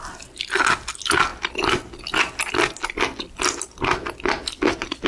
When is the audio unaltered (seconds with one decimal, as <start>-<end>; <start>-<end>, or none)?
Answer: 0.0-5.1